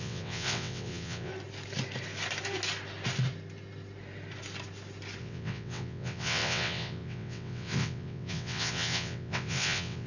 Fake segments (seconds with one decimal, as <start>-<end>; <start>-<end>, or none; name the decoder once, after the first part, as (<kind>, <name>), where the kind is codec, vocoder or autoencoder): 0.0-1.3 (vocoder, WaveNeXt); 5.2-10.1